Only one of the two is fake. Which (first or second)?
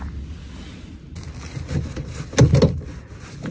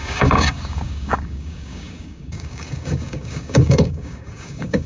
second